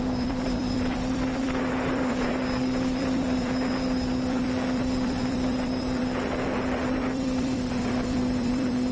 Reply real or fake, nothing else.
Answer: fake